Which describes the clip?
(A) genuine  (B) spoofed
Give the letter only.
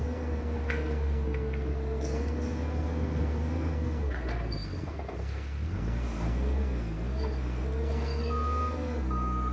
B